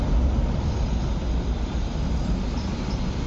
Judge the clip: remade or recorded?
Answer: recorded